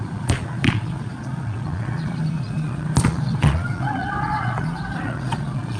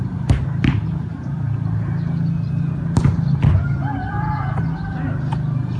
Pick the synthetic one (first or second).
first